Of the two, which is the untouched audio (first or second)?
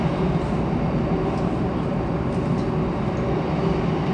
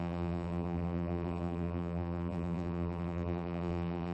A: first